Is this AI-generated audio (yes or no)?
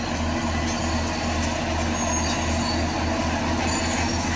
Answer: no